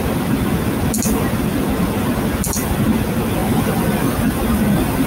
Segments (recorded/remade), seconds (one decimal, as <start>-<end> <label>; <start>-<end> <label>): 0.0-5.1 recorded